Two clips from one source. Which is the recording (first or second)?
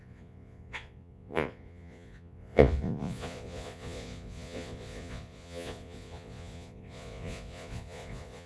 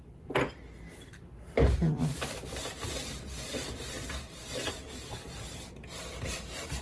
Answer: second